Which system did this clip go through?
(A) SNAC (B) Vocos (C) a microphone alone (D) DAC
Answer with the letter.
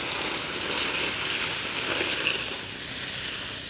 C